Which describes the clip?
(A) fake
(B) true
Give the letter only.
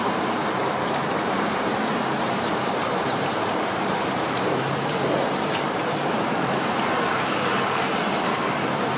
A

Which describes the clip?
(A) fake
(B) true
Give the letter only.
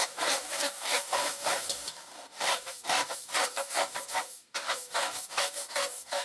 A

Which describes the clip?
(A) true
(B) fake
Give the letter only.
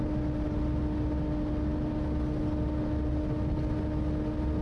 A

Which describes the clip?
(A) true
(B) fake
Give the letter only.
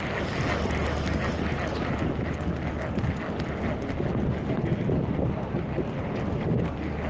A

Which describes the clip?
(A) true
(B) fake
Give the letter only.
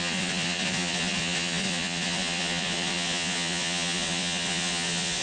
B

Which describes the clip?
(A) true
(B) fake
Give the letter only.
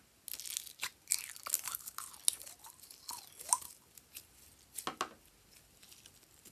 A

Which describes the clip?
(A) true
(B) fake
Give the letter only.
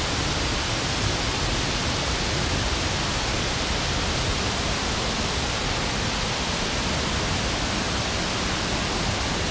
A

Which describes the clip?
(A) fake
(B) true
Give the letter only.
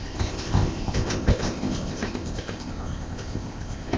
A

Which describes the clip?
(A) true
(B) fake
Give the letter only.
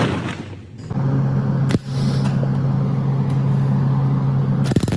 A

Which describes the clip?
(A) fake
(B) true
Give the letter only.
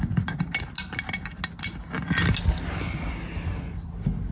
B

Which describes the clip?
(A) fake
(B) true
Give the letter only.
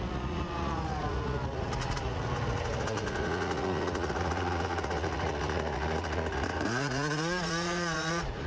A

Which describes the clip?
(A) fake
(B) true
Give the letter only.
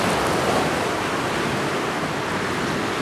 B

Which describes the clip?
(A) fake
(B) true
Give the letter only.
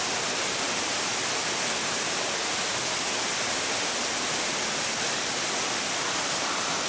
B